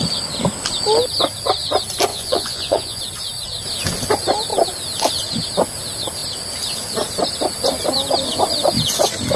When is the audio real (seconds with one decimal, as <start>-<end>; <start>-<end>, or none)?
0.0-2.1; 3.0-9.4